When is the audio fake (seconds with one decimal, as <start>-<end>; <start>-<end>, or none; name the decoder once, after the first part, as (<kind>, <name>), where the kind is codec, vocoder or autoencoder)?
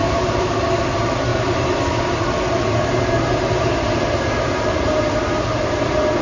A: 1.3-5.0 (vocoder, BigVGAN v2)